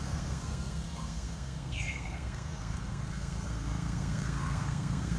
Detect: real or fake fake